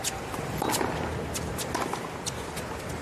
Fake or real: fake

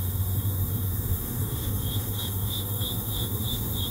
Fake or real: fake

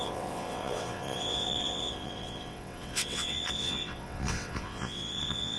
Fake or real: fake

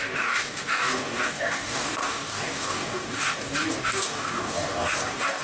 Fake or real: fake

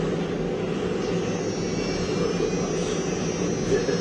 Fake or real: real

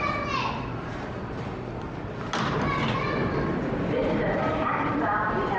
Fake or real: real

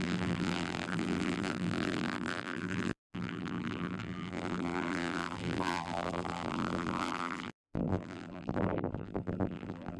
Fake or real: fake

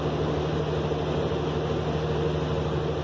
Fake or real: real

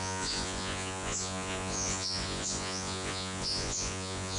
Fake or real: fake